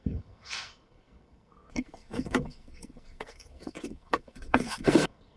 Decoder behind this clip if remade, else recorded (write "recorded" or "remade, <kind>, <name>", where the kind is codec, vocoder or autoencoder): remade, codec, SNAC